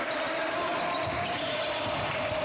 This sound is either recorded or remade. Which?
recorded